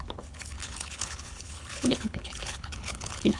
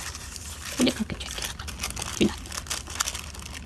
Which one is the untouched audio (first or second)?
second